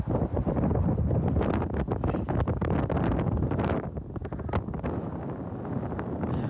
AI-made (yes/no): no